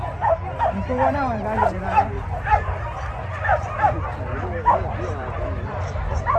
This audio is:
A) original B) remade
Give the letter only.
A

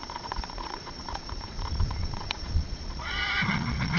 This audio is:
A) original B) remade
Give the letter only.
B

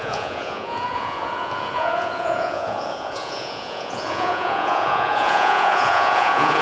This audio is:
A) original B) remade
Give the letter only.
B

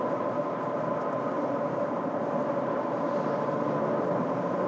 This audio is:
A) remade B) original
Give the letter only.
B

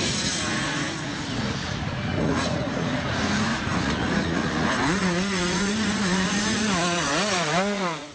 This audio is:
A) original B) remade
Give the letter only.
B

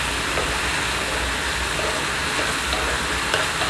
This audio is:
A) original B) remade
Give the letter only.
A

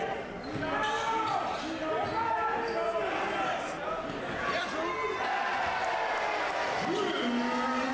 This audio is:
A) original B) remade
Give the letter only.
A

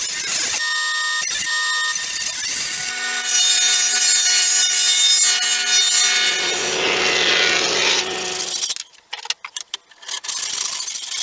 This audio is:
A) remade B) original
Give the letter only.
B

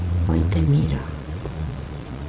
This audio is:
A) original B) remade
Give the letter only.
B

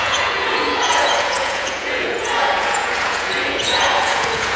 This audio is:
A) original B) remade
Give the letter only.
B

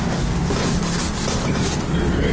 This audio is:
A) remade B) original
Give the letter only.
B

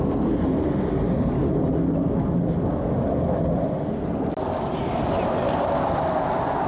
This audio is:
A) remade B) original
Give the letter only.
B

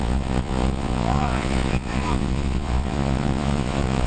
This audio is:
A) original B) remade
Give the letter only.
B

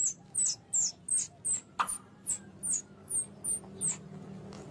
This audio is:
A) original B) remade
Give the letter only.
A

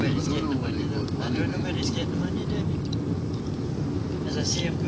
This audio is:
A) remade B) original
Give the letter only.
B